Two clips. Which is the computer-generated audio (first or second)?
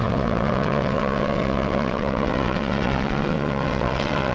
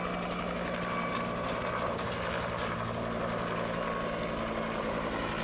first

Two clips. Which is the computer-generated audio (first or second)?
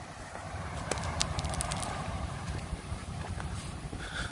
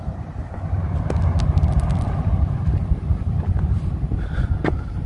first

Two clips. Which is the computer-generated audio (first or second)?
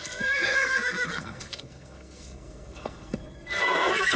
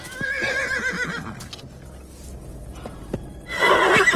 first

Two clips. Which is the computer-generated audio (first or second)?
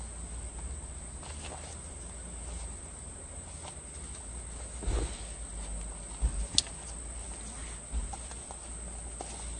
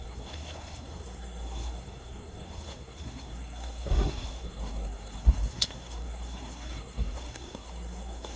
second